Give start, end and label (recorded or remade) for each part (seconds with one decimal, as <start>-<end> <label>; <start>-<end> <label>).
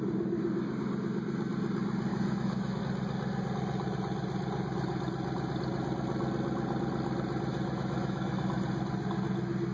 0.0-2.1 recorded; 2.1-2.8 remade; 2.8-7.5 recorded; 7.5-8.4 remade; 8.4-9.7 recorded